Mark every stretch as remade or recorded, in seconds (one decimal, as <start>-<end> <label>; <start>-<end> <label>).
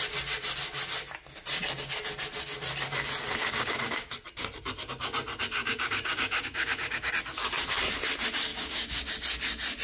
0.0-3.4 recorded; 3.4-4.1 remade; 4.1-5.6 recorded; 5.6-7.1 remade; 7.1-8.5 recorded; 8.5-9.1 remade; 9.1-9.8 recorded